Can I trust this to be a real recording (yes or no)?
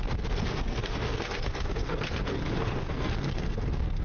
no